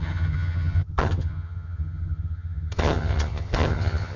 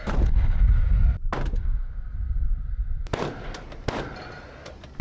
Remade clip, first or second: first